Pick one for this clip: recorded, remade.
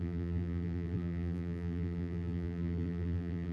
remade